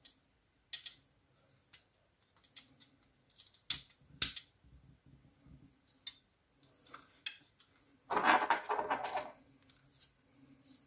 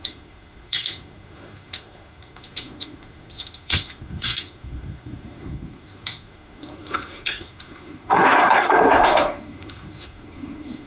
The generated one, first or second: second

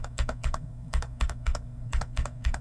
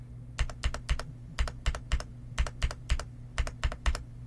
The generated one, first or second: first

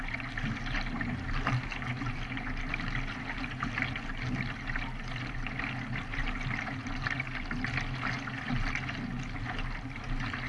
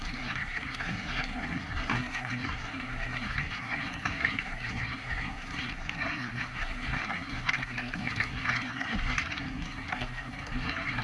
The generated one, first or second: second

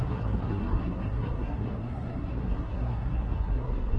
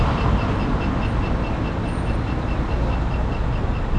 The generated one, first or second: first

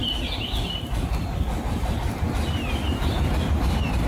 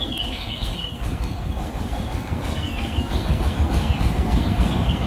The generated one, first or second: second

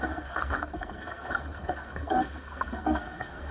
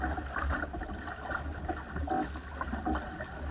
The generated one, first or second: first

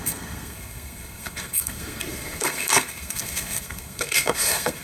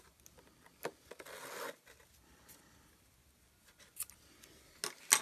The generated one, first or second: first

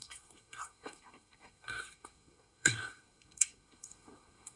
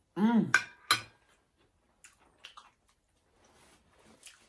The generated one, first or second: first